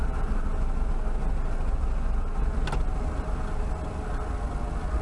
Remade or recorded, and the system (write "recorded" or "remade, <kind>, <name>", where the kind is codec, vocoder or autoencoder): recorded